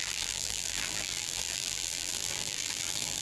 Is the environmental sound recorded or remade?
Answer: remade